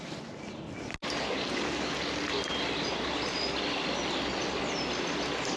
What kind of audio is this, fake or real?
real